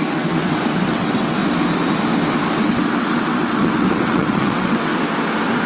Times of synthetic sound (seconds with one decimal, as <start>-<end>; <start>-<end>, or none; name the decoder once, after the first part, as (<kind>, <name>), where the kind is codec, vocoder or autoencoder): 0.0-1.4 (vocoder, WaveNeXt); 2.6-4.9

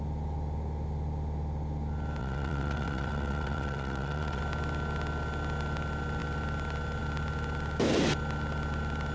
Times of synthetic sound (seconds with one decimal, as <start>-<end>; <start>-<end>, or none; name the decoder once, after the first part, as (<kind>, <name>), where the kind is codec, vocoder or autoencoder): 2.2-4.4 (vocoder, WaveNeXt)

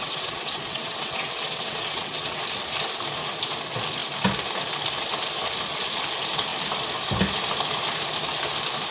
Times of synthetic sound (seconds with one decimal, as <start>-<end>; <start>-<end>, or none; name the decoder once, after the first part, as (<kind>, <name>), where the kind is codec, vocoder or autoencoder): 0.0-2.4 (vocoder, WaveNeXt)

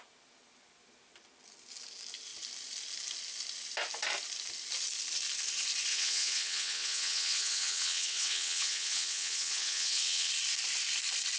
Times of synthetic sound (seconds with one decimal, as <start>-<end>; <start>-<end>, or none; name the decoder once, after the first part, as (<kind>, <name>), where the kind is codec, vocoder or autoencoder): 5.9-10.3 (vocoder, WaveNeXt)